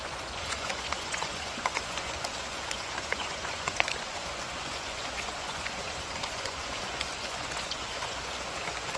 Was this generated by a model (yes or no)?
yes